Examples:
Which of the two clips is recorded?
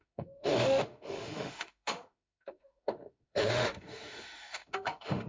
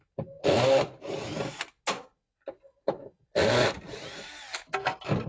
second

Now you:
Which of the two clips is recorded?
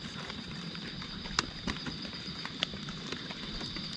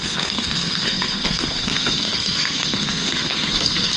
first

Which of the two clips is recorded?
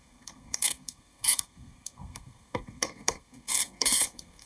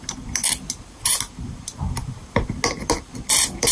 second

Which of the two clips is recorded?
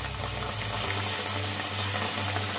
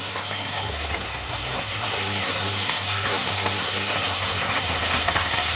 first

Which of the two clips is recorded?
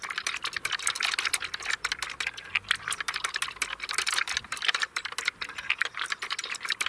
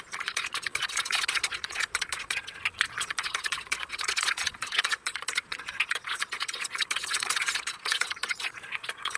first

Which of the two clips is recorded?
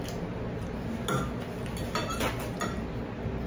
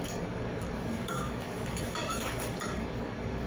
first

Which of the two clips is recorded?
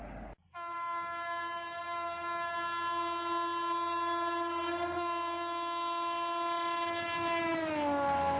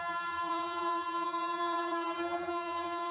first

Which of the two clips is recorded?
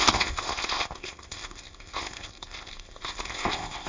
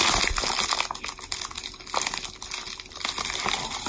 second